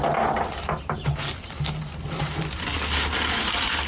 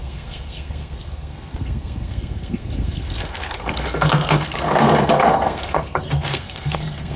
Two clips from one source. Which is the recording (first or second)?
first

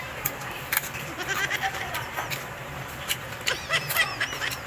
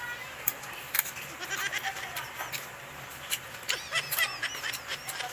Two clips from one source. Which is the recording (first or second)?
second